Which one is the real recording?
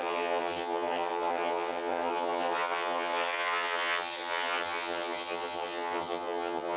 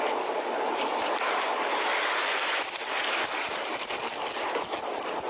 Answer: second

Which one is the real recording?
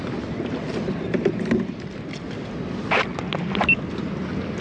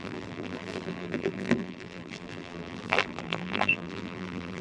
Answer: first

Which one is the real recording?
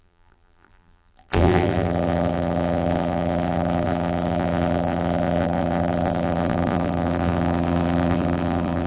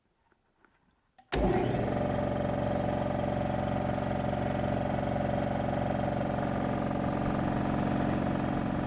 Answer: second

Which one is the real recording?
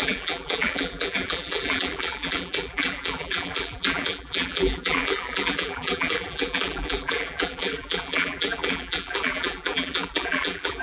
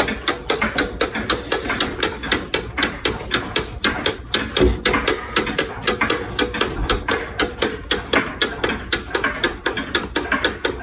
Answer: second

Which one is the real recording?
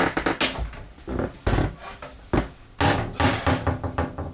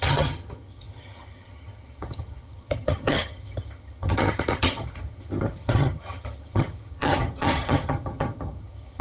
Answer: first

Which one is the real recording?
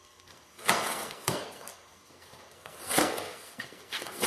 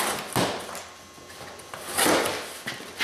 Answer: second